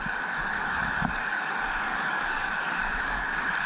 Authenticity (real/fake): fake